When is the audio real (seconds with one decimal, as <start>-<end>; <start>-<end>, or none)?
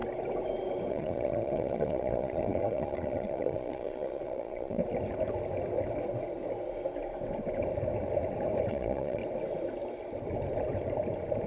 0.0-0.9; 4.8-8.7; 9.2-11.5